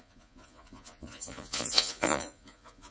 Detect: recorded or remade remade